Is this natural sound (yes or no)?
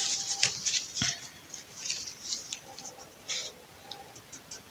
yes